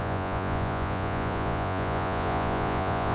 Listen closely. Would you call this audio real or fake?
fake